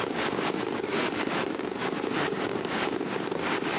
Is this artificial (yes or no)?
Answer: yes